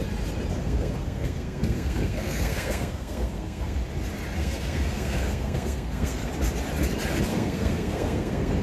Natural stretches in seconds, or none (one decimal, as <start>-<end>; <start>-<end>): 0.0-0.6; 3.8-4.4; 6.3-7.3